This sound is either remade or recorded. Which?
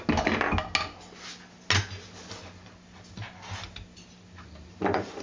recorded